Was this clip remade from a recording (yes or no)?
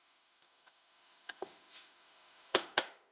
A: yes